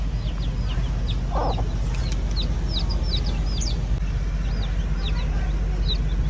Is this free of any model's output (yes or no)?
yes